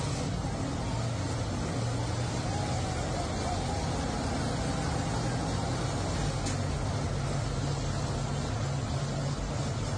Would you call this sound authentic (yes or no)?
yes